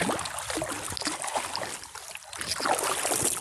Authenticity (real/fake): real